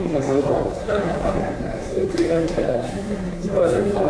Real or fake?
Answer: fake